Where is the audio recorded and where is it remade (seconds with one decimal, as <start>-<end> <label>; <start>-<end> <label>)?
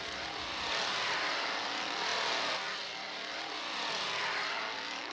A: 0.0-5.1 recorded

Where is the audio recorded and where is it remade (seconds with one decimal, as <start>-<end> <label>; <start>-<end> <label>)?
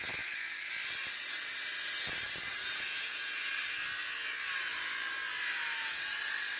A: 0.0-2.5 recorded; 2.5-3.5 remade; 3.5-6.6 recorded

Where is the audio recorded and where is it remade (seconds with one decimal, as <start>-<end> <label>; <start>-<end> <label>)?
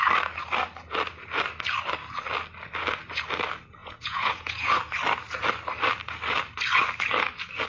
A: 0.0-3.8 recorded; 3.8-4.8 remade; 4.8-7.7 recorded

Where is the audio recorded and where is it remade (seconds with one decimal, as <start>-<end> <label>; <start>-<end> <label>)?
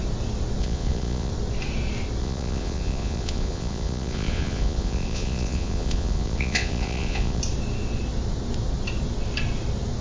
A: 0.0-0.6 recorded; 0.6-1.3 remade; 1.3-2.2 recorded; 2.2-7.4 remade; 7.4-10.0 recorded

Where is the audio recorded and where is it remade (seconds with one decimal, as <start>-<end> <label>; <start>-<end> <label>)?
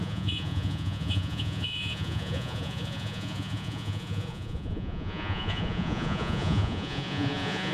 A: 0.0-7.7 remade